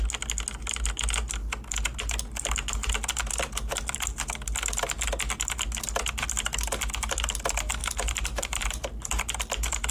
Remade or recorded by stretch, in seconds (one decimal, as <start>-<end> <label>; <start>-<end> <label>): 0.0-7.8 recorded; 7.8-9.3 remade; 9.3-9.9 recorded